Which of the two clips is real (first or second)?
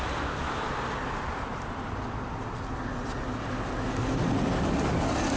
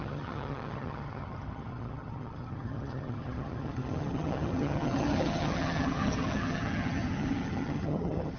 first